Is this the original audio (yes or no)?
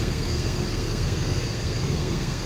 no